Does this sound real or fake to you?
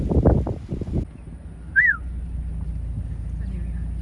real